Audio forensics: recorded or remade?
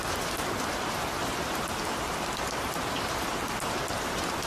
recorded